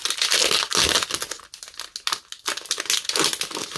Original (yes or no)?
yes